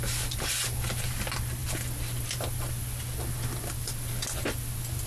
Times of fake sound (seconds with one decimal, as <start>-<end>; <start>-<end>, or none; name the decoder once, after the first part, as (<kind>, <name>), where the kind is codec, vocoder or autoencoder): none